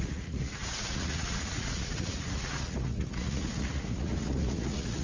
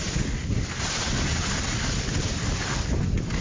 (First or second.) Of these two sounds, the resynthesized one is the first